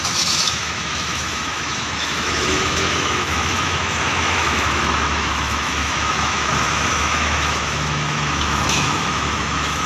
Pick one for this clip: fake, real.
fake